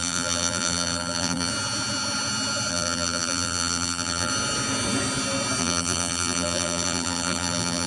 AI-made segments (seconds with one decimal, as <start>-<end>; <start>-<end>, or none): 0.0-1.5; 2.7-4.3; 5.6-7.9